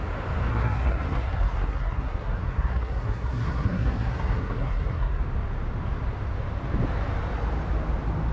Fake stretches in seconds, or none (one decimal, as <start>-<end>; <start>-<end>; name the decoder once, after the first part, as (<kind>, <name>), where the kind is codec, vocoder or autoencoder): 0.5-5.2 (codec, SNAC)